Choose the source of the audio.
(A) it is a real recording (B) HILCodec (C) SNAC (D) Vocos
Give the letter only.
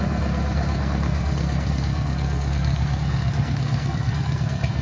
C